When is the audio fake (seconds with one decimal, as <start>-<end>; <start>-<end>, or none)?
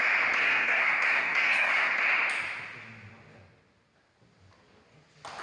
0.4-1.9